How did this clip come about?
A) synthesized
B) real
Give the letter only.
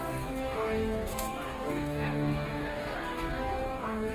A